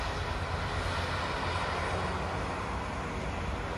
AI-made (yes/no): no